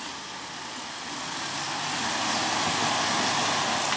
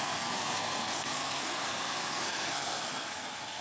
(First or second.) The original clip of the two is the first